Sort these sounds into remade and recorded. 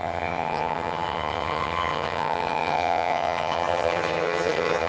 remade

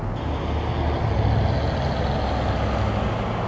recorded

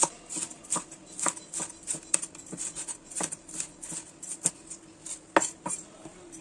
recorded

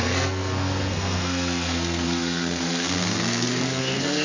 remade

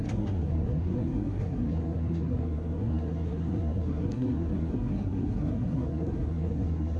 remade